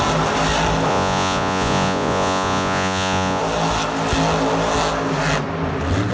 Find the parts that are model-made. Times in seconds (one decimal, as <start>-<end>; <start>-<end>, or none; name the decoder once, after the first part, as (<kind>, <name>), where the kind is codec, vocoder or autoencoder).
0.9-3.4 (vocoder, Vocos)